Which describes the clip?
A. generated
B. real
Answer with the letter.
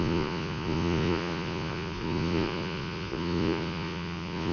A